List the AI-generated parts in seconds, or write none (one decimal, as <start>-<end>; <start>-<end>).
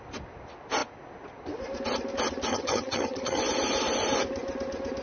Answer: 2.5-3.4